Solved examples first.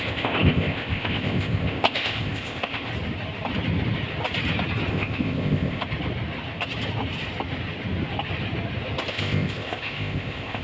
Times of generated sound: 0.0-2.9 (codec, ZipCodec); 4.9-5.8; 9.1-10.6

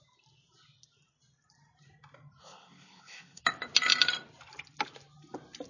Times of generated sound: 2.4-3.4 (codec, ZipCodec)